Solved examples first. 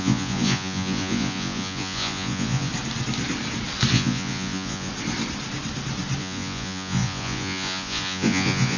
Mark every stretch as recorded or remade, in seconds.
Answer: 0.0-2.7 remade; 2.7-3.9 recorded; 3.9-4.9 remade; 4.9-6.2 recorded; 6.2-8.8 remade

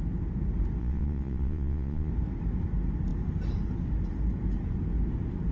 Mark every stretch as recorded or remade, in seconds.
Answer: 0.0-0.8 recorded; 0.8-2.1 remade; 2.1-5.5 recorded

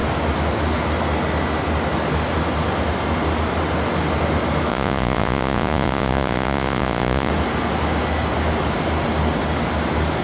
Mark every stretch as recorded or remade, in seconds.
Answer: 0.0-4.7 recorded; 4.7-7.3 remade; 7.3-10.2 recorded

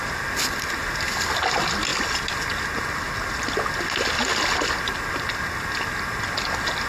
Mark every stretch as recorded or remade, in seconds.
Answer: 0.0-6.9 recorded